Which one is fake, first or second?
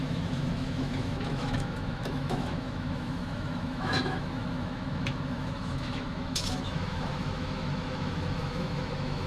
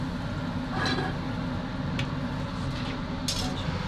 first